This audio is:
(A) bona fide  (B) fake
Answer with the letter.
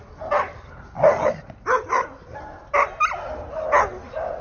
A